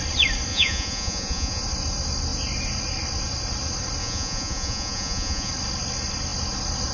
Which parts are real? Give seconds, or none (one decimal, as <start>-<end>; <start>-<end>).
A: 0.0-0.5; 1.6-4.0; 5.5-6.9